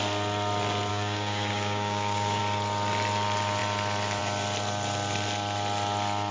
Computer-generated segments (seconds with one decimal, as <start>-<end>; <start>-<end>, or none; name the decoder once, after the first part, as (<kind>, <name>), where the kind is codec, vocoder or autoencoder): 0.9-2.4 (codec, DAC)